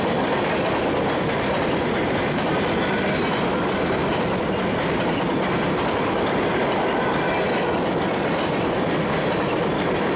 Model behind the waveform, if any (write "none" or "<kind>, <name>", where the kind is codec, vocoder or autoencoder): none